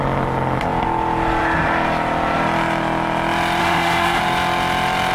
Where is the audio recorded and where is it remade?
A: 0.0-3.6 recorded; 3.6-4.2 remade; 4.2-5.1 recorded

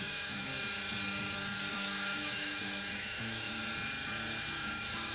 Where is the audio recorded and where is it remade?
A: 0.0-0.5 remade; 0.5-1.7 recorded; 1.7-3.6 remade; 3.6-4.4 recorded; 4.4-5.1 remade

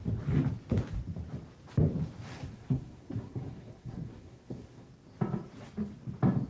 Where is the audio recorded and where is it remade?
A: 0.0-2.3 recorded; 2.3-4.9 remade; 4.9-6.5 recorded